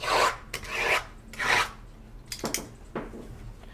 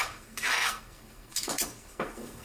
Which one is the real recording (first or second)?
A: first